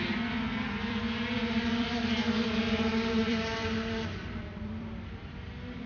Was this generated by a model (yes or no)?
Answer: yes